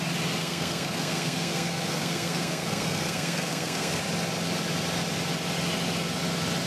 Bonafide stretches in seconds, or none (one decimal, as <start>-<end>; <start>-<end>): 0.0-0.4; 4.0-6.7